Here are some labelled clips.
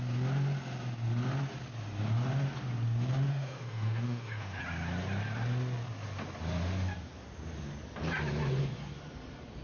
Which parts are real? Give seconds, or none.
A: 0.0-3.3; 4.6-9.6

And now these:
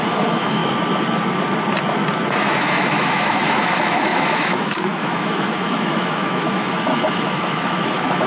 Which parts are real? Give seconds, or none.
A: 0.6-2.6

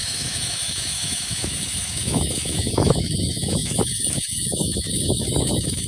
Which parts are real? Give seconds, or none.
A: none

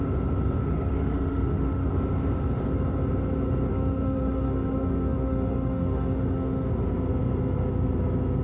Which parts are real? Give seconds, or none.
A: 0.0-0.6; 1.9-3.7; 6.7-8.4

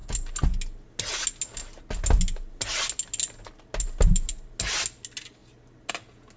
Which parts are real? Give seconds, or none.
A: 0.0-6.4

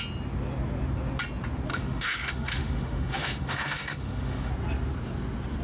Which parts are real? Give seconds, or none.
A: 0.0-1.7; 4.5-5.6